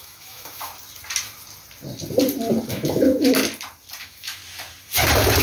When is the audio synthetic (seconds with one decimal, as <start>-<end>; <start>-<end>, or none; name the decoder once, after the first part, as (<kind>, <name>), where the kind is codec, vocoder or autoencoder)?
0.0-0.7 (autoencoder, DAC-VAE); 2.7-3.4; 4.0-4.4